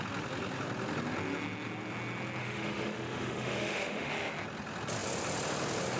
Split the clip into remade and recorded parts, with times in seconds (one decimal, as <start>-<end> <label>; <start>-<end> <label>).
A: 0.0-2.4 recorded; 2.4-4.1 remade; 4.1-6.0 recorded